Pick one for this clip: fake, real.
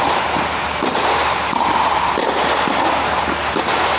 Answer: real